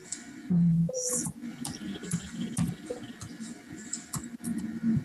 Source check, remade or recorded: recorded